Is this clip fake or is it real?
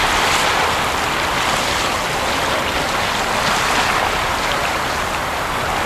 real